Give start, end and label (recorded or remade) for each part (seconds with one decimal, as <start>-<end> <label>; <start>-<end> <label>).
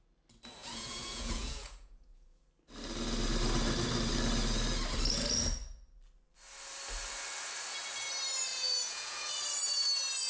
0.0-0.6 recorded; 0.6-2.5 remade; 2.5-8.5 recorded; 8.5-9.3 remade; 9.3-10.3 recorded